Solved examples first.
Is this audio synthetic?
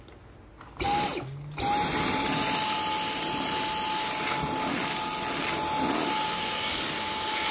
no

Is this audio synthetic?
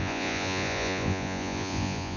yes